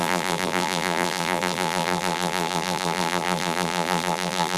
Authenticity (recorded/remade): remade